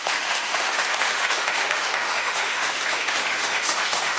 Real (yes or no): no